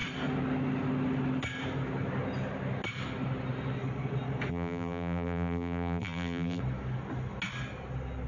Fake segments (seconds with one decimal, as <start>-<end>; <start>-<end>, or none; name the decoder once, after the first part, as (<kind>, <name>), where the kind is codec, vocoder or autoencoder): 4.5-6.6 (vocoder, BigVGAN v2)